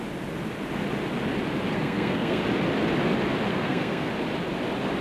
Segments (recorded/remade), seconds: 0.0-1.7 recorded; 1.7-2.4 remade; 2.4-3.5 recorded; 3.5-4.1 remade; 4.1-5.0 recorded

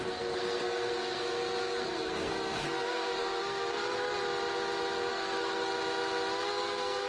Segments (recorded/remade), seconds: 0.0-4.1 remade; 4.1-5.1 recorded; 5.1-5.7 remade; 5.7-6.4 recorded; 6.4-7.1 remade

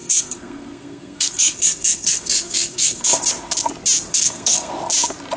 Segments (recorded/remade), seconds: 0.0-3.2 remade; 3.2-4.1 recorded; 4.1-4.7 remade; 4.7-5.4 recorded

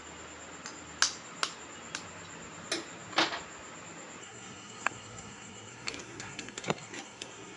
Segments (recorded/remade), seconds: 0.0-4.2 recorded; 4.2-7.6 remade

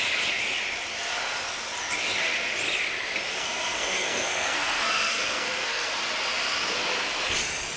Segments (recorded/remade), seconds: 0.0-3.3 recorded; 3.3-5.9 remade; 5.9-7.8 recorded

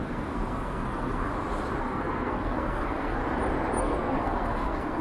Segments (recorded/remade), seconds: 0.0-1.3 remade; 1.3-1.8 recorded; 1.8-3.2 remade; 3.2-3.8 recorded; 3.8-5.0 remade